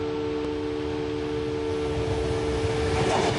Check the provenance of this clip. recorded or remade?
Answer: recorded